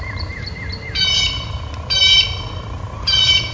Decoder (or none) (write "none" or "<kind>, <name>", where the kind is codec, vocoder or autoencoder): none